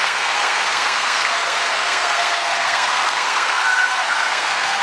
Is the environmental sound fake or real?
fake